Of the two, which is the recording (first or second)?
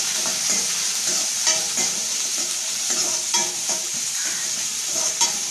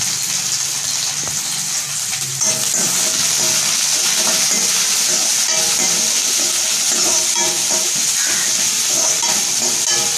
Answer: second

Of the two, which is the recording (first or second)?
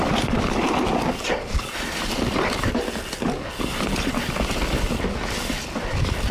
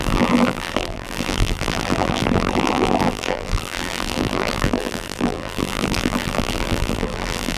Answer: first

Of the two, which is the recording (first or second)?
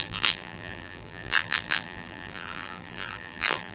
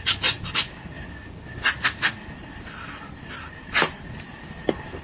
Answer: second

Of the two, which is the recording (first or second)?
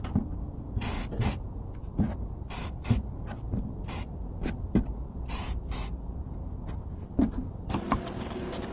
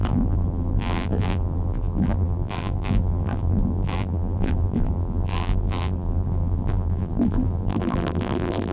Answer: first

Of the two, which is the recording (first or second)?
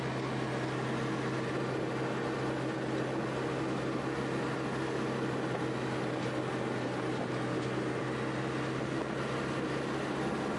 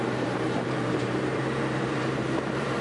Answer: first